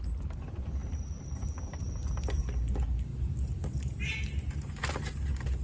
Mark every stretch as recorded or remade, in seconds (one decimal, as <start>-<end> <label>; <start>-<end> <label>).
0.0-5.6 recorded